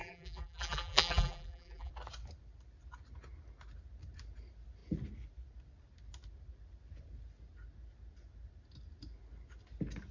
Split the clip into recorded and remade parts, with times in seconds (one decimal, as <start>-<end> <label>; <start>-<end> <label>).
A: 0.0-1.9 remade; 1.9-10.1 recorded